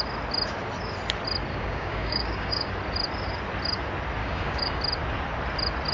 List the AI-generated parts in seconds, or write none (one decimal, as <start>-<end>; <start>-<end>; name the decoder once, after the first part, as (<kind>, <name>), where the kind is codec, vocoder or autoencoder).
1.5-2.7 (codec, DAC); 4.2-4.8